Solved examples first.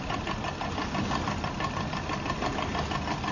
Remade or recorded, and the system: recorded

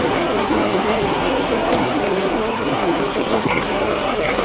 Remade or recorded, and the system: remade, codec, SNAC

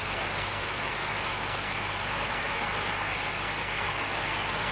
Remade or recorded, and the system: remade, codec, SNAC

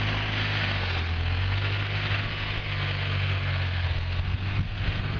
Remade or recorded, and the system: remade, codec, SNAC